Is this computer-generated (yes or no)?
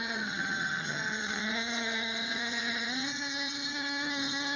yes